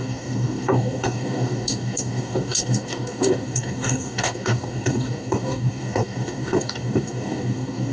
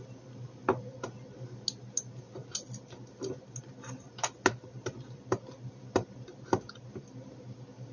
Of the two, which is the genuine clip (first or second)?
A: second